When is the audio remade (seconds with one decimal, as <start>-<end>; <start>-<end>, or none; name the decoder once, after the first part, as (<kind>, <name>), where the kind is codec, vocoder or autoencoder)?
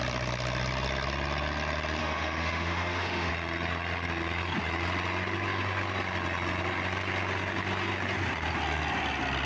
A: 2.0-3.3 (autoencoder, DAC-VAE)